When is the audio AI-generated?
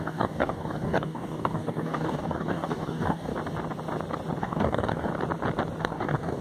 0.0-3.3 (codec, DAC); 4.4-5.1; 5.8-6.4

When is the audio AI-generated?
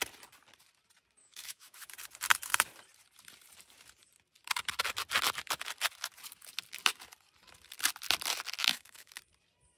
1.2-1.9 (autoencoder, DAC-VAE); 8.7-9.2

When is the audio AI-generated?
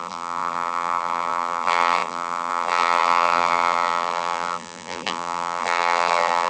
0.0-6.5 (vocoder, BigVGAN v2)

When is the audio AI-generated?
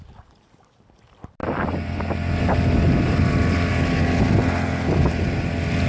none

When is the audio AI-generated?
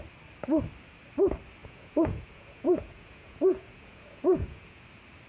1.6-4.8 (vocoder, Vocos)